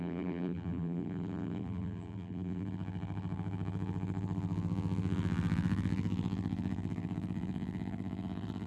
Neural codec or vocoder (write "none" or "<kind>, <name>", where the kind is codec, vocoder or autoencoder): vocoder, BigVGAN v2